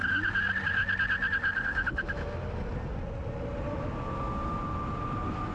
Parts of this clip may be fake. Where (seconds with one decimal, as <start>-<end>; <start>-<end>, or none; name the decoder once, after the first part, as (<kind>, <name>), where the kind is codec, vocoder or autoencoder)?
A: none